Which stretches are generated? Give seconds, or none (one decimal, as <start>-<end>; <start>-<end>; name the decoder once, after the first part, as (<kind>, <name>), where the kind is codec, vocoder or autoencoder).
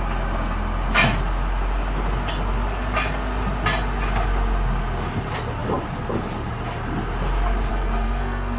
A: 7.7-8.6 (codec, SNAC)